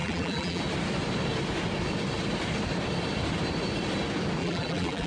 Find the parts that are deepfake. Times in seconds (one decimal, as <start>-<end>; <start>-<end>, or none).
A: 0.0-0.6; 4.4-5.1